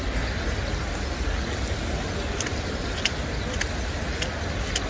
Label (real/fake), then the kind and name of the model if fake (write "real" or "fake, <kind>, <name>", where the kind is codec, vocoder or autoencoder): real